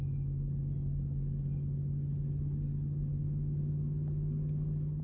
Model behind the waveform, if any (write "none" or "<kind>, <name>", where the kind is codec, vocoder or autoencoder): none